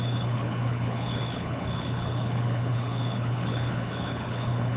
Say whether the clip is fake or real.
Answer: fake